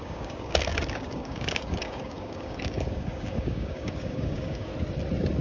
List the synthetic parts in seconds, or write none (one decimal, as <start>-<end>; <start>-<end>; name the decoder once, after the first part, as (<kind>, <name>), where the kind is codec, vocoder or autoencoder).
0.0-4.7 (codec, DAC)